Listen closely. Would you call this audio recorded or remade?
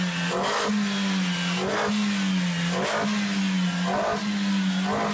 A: recorded